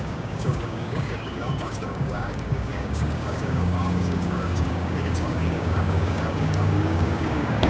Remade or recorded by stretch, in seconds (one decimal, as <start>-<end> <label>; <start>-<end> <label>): 0.0-7.7 remade